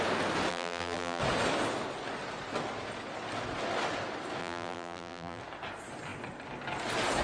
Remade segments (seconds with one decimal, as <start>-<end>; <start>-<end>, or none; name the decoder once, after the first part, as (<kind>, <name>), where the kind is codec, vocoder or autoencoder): 0.5-1.2 (vocoder, BigVGAN v2); 4.4-5.4